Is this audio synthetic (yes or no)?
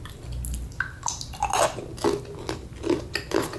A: no